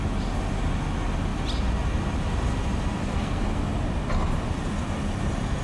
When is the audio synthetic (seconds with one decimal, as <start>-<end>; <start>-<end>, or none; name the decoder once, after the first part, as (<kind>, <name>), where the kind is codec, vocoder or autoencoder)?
3.0-3.6 (codec, SNAC)